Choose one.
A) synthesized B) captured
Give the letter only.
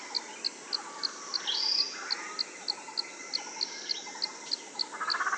B